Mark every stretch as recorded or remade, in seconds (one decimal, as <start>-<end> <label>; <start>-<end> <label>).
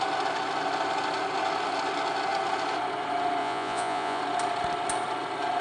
0.0-3.4 recorded; 3.4-4.2 remade; 4.2-5.6 recorded